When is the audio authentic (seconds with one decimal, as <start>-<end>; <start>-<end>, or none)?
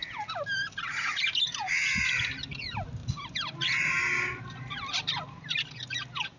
0.0-6.4